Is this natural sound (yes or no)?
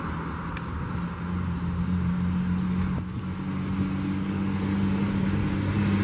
yes